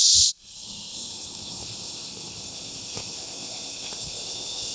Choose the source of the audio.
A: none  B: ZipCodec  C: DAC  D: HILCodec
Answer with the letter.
B